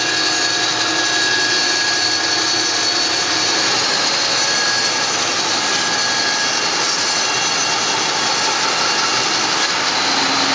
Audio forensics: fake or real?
real